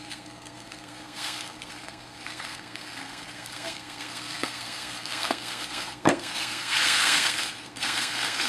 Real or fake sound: fake